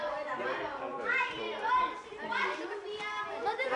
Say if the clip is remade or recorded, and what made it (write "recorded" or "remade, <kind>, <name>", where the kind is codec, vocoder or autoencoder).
recorded